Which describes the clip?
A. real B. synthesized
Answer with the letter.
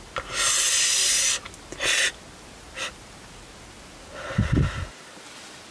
A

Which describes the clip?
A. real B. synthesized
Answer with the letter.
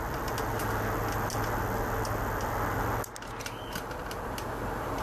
A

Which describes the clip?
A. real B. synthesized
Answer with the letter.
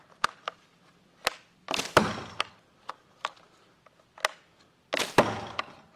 A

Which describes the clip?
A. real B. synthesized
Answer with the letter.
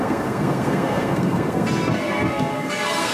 B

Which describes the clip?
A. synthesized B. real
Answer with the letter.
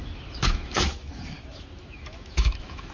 A